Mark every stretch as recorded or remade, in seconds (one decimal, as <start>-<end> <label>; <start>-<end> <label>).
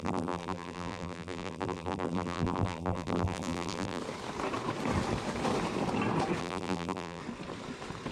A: 0.0-4.0 remade; 4.0-6.4 recorded; 6.4-7.2 remade; 7.2-8.1 recorded